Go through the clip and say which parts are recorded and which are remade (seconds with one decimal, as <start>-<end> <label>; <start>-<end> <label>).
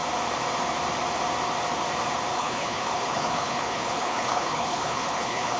0.0-2.3 recorded; 2.3-5.6 remade